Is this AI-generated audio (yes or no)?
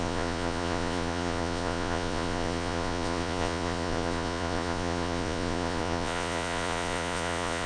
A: yes